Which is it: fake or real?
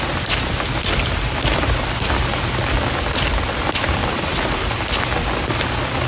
real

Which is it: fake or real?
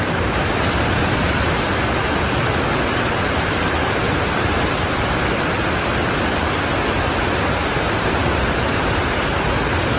real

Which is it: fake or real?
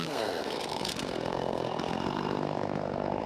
fake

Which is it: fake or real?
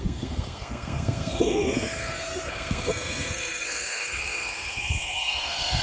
fake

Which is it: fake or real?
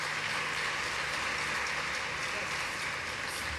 real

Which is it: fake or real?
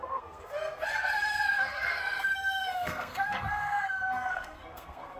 fake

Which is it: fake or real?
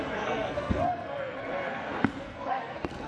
fake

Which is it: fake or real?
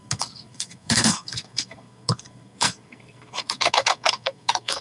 fake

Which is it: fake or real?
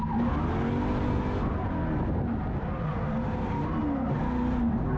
real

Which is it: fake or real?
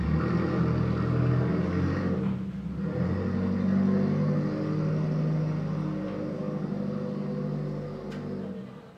real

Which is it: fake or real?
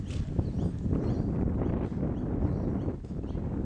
real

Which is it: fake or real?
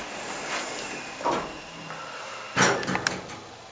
real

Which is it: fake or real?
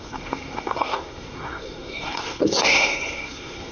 fake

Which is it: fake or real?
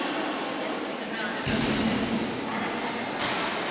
real